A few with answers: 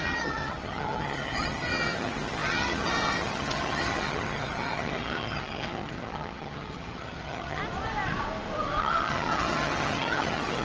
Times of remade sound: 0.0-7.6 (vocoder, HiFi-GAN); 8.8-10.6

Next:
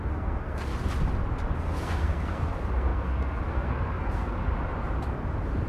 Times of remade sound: 0.0-0.7 (codec, SNAC); 1.6-4.4

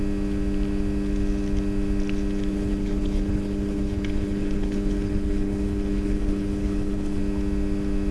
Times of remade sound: 2.5-7.2 (codec, HILCodec)